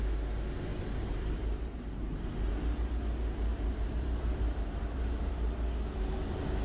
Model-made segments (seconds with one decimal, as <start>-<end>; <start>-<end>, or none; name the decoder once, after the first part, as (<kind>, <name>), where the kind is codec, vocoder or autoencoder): 0.7-2.5 (vocoder, BigVGAN v2); 3.5-5.3